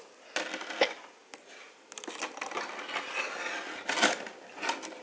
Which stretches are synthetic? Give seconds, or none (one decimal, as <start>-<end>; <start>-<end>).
none